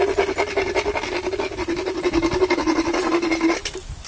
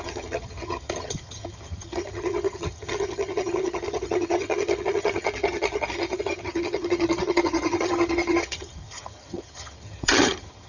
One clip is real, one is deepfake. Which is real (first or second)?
first